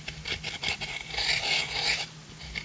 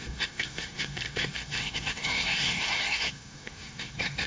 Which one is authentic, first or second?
first